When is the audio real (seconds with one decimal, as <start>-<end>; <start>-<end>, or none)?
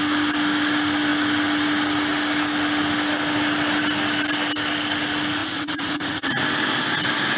0.0-5.4; 6.4-7.4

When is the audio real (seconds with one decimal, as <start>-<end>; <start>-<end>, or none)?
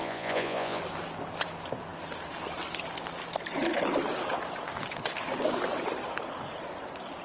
0.8-7.2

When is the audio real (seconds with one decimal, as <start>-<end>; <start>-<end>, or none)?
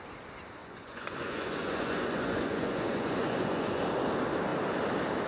0.0-0.6; 3.8-5.3